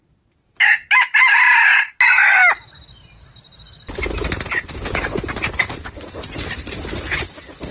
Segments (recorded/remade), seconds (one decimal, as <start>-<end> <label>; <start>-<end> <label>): 0.0-7.7 recorded

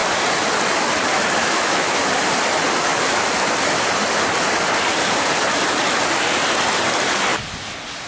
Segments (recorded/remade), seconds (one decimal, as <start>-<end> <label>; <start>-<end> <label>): 0.0-1.4 recorded; 1.4-2.1 remade; 2.1-8.1 recorded